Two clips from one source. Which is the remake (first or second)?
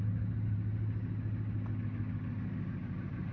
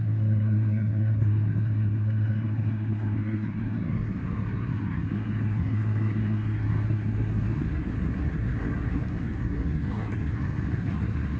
second